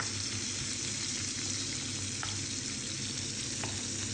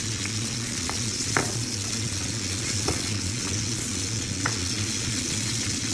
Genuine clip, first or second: first